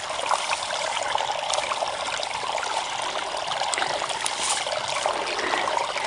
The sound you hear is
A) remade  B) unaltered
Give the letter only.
B